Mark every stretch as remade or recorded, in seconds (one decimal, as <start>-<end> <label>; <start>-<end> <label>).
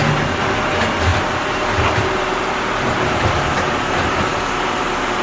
0.0-1.1 recorded; 1.1-4.2 remade; 4.2-5.2 recorded